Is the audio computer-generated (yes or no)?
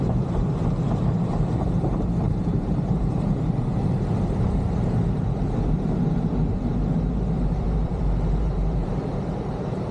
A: yes